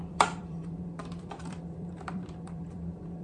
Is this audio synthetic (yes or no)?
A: yes